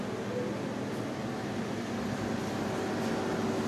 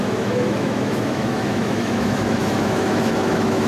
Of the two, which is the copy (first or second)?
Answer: second